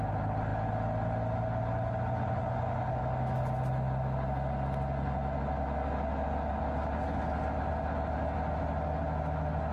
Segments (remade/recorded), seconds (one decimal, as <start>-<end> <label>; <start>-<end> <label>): 0.0-9.7 recorded